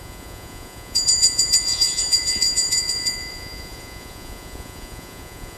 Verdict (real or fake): fake